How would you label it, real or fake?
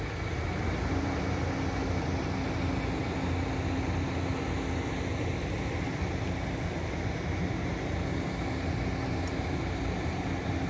real